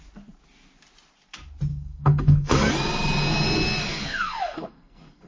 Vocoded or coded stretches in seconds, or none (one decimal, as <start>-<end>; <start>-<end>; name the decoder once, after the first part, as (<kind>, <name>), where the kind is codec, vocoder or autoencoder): 1.7-2.7 (codec, SNAC); 3.8-5.3